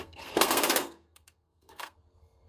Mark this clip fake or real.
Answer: fake